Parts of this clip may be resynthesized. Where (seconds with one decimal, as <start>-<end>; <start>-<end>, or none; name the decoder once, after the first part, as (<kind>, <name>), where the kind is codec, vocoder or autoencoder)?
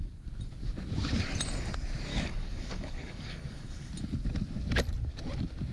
2.1-3.9 (codec, DAC)